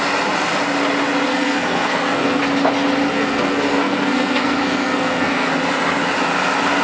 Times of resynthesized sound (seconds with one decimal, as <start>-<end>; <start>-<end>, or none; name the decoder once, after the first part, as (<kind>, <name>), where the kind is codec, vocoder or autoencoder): 1.3-2.4 (codec, SNAC); 3.1-5.5